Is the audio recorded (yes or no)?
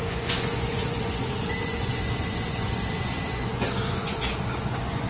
no